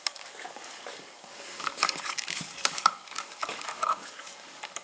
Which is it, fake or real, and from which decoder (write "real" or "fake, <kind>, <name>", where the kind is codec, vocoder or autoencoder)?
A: fake, codec, DAC